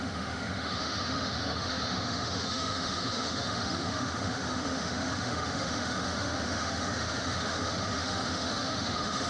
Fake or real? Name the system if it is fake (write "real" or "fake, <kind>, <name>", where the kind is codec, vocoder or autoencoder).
fake, autoencoder, DAC-VAE